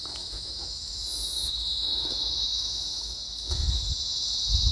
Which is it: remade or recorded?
remade